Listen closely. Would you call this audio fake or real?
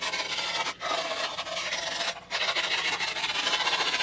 real